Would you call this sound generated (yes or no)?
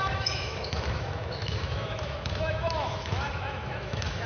yes